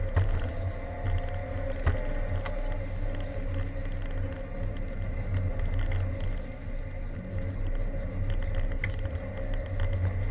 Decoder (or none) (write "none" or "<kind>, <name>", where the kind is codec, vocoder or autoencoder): none